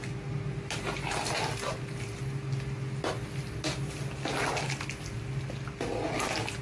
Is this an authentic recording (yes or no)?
yes